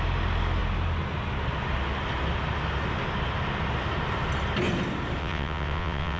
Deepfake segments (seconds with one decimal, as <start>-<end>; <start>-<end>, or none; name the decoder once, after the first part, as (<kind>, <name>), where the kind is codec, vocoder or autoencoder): 5.2-6.2 (vocoder, WaveNeXt)